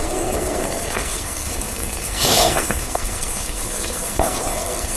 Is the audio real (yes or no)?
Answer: no